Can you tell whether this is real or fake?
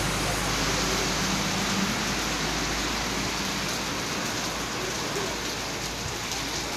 real